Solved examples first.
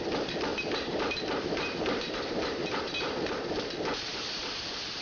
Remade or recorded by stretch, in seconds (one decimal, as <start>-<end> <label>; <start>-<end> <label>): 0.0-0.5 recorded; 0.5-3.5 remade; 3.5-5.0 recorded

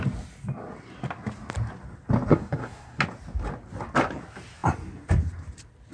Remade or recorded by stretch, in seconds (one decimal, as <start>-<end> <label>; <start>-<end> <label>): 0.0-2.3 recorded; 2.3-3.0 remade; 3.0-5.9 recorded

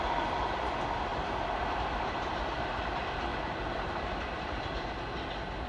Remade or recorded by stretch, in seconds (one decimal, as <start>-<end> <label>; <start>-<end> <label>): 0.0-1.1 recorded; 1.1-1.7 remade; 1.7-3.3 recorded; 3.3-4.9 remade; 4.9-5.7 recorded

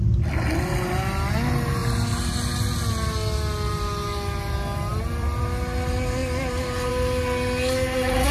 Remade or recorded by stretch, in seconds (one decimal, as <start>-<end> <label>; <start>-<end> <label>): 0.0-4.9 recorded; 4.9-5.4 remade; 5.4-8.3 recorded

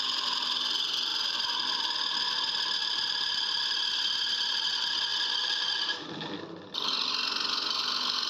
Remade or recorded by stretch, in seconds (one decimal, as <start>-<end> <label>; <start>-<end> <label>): 0.0-5.1 recorded; 5.1-6.1 remade; 6.1-8.3 recorded

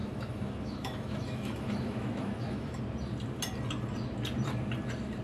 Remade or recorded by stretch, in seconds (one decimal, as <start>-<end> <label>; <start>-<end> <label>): 0.0-2.8 remade; 2.8-5.2 recorded

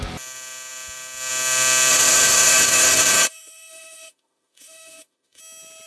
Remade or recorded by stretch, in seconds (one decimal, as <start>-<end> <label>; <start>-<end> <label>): 0.0-1.9 recorded; 1.9-5.4 remade; 5.4-5.9 recorded